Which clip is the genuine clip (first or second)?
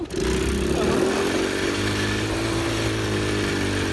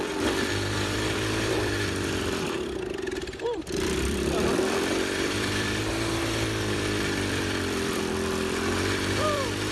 first